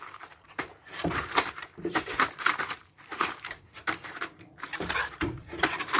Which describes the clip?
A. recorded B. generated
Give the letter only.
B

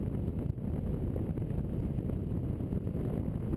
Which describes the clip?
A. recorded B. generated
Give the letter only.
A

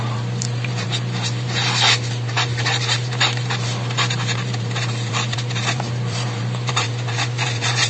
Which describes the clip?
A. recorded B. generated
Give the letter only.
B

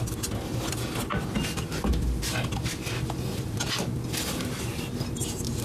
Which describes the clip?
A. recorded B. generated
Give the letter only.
A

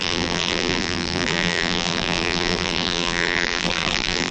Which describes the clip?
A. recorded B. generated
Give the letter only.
B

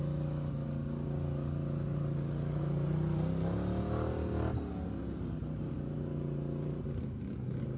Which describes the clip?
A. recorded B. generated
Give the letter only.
A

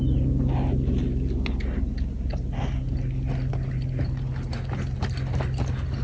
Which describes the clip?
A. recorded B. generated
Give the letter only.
A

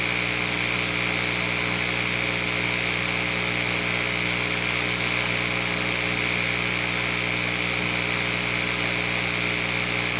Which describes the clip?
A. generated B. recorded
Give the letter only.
B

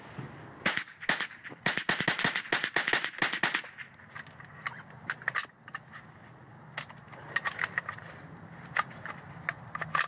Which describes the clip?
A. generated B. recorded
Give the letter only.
B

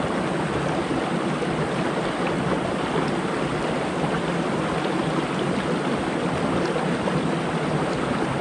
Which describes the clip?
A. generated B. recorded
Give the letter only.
B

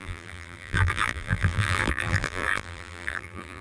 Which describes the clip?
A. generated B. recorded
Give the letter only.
A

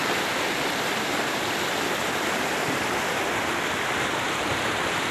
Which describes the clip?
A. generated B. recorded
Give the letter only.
A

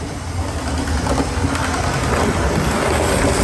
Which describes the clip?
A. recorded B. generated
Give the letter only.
A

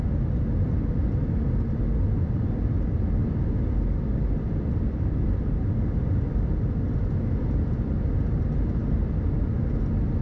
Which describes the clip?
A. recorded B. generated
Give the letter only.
B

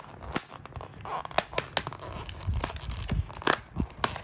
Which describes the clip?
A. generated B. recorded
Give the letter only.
B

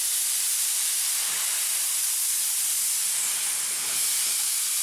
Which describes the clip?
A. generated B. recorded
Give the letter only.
A